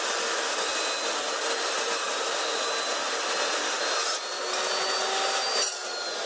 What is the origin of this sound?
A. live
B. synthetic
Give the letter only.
A